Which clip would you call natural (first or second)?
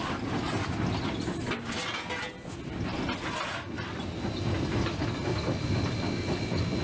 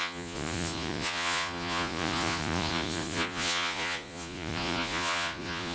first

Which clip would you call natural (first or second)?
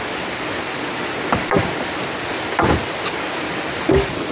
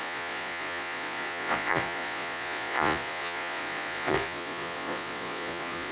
first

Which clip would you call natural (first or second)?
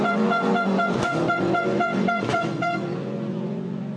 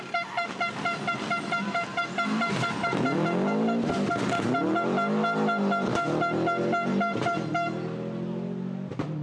second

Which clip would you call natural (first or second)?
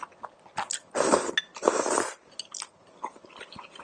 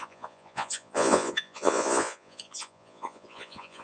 first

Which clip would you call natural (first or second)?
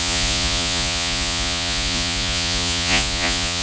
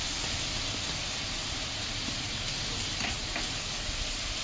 second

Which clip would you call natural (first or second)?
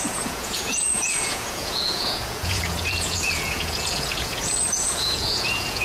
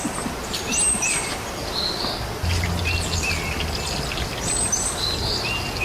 second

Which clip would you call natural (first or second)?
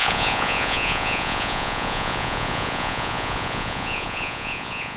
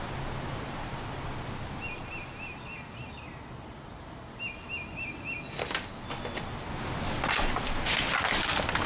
second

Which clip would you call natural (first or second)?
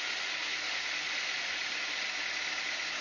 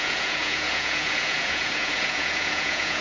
first